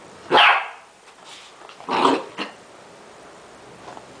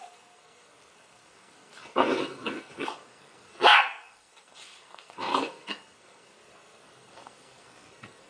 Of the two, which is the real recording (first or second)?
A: first